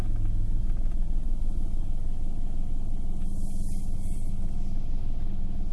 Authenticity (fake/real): real